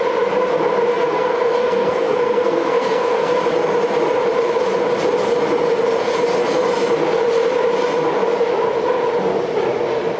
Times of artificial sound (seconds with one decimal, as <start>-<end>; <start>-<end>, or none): 0.9-3.4

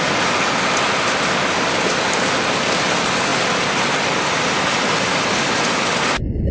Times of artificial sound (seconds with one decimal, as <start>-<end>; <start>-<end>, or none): none

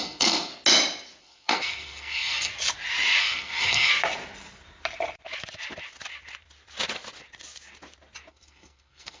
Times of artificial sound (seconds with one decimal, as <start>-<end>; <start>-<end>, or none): 0.0-0.5; 1.2-2.5; 3.2-3.9; 8.3-9.2

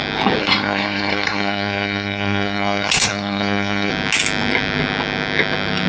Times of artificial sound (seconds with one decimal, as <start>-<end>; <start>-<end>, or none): 0.4-3.9

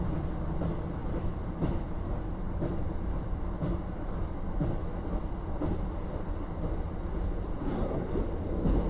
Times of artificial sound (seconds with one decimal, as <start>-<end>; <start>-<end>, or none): 7.6-8.2